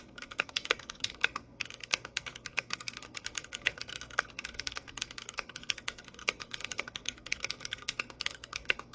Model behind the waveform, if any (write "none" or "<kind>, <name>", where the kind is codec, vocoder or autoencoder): codec, SNAC